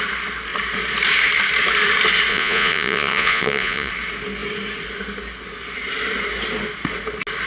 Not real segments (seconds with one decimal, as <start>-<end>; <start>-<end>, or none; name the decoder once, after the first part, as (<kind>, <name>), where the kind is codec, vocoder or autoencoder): 2.3-3.9 (vocoder, Vocos)